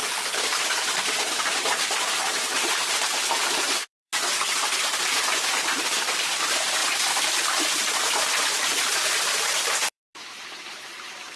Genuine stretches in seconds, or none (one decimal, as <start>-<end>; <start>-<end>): 6.8-8.0